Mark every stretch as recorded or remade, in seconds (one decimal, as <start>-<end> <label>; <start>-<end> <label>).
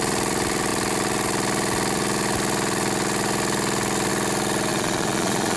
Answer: 0.0-4.7 recorded; 4.7-5.6 remade